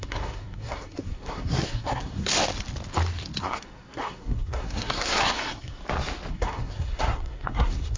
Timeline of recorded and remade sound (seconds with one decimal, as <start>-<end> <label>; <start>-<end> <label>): 0.0-2.3 remade; 2.3-3.4 recorded; 3.4-5.8 remade; 5.8-6.3 recorded; 6.3-8.0 remade